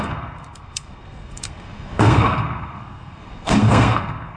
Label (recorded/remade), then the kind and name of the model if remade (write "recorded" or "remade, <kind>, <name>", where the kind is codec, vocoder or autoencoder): remade, codec, SNAC